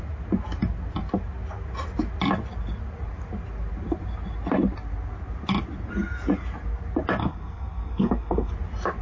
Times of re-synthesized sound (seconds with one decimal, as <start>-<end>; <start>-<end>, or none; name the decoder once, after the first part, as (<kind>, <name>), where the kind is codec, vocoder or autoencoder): 7.2-8.5 (codec, SNAC)